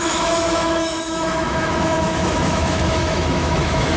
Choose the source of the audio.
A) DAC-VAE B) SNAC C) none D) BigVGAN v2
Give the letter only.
A